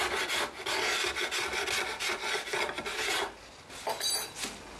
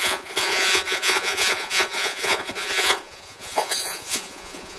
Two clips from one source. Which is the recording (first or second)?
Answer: first